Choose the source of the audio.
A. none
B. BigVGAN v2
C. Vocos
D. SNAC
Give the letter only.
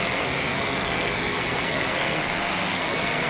D